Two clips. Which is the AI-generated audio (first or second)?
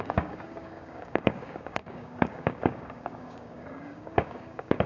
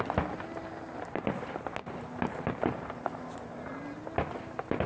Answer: first